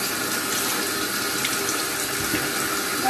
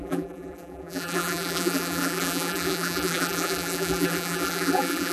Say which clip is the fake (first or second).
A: second